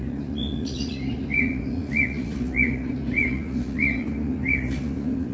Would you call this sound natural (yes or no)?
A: no